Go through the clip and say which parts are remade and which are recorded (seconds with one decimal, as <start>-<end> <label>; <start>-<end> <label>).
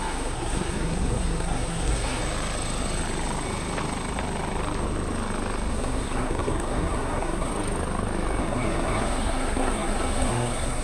0.0-2.2 remade; 2.2-5.7 recorded; 5.7-7.5 remade; 7.5-8.4 recorded; 8.4-10.8 remade